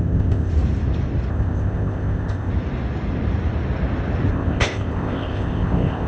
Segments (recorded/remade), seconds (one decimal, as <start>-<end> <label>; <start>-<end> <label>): 0.0-0.5 remade; 0.5-1.3 recorded; 1.3-2.5 remade; 2.5-4.3 recorded; 4.3-6.1 remade